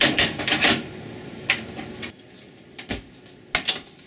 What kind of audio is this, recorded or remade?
recorded